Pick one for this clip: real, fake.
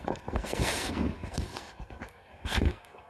fake